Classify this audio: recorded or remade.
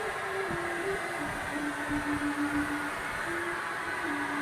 recorded